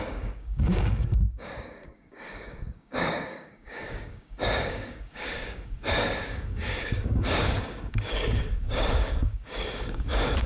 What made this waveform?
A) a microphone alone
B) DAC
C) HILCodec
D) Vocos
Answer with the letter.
B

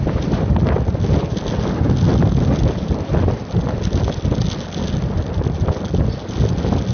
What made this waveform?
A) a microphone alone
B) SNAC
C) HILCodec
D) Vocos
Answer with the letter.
A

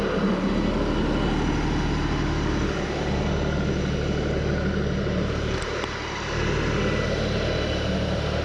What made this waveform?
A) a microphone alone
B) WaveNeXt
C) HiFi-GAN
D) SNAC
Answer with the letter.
A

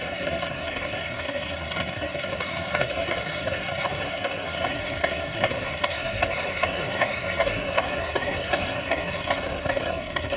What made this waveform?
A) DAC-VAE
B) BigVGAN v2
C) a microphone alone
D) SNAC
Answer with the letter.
D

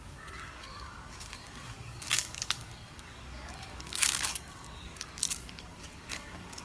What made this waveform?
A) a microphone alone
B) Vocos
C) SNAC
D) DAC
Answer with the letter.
D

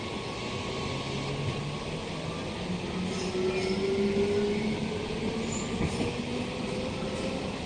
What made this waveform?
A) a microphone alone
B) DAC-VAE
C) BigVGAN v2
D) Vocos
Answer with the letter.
A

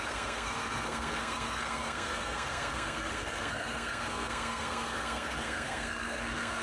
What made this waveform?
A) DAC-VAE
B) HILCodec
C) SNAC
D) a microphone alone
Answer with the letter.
C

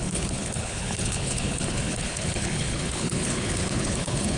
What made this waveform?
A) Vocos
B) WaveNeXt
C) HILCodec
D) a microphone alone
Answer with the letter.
C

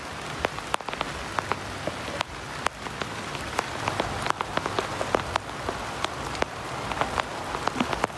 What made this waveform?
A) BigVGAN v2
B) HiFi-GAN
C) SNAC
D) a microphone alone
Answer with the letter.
D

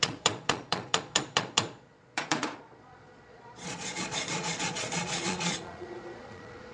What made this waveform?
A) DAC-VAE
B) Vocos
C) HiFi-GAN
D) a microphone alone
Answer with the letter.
B